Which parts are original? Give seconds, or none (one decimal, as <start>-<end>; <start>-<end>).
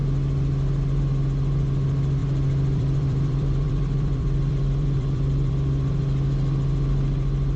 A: 0.0-2.2; 5.5-7.6